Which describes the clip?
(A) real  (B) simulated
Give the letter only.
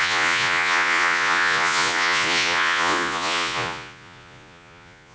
B